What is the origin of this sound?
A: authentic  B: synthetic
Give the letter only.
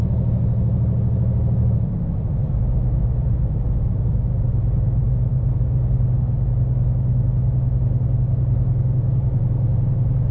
A